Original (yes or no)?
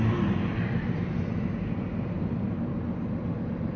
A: yes